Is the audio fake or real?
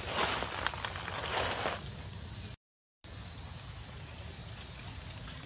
real